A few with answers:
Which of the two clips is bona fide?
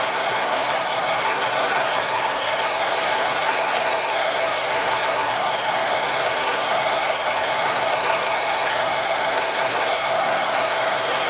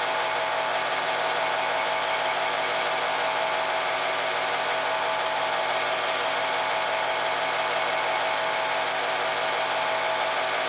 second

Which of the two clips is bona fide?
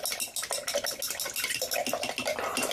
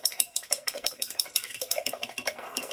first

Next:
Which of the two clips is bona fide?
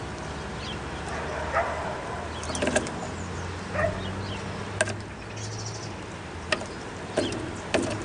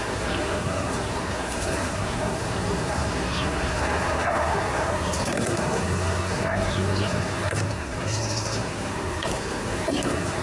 first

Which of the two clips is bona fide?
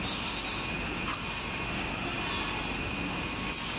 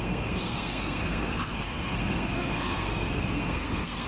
first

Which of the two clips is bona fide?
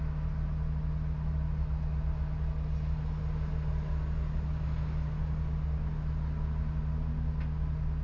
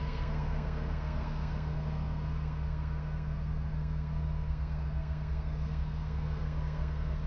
first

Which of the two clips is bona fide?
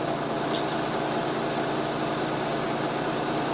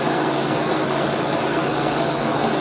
first